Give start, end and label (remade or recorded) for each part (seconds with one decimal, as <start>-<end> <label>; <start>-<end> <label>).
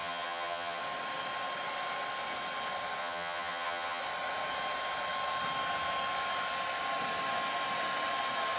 0.0-0.8 remade; 0.8-3.0 recorded; 3.0-4.0 remade; 4.0-8.6 recorded